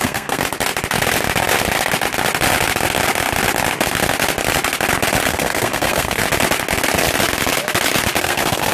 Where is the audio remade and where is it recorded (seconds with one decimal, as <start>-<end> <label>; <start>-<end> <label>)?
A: 0.0-0.4 remade; 0.4-5.3 recorded; 5.3-6.2 remade; 6.2-8.2 recorded; 8.2-8.7 remade